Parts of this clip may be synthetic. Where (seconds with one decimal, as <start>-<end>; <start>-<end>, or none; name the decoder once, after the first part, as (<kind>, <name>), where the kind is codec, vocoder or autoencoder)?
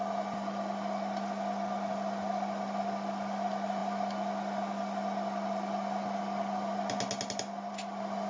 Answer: none